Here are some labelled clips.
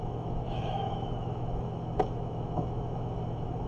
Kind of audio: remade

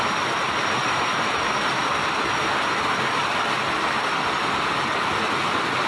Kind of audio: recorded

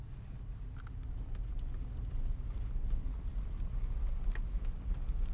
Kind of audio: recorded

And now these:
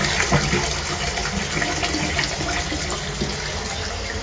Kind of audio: recorded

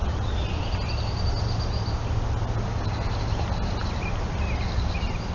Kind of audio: recorded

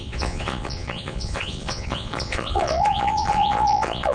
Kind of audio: remade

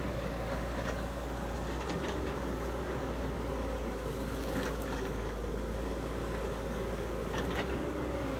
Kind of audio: remade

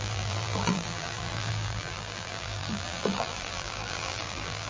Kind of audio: remade